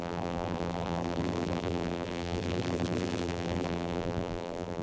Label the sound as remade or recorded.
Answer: remade